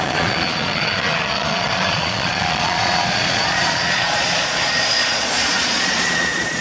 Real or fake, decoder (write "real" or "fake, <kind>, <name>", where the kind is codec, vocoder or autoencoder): fake, vocoder, Vocos